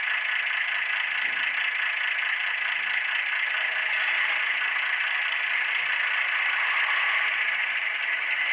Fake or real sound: real